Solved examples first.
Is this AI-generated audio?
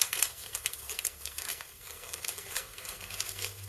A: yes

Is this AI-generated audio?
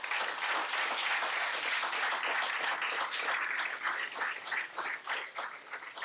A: no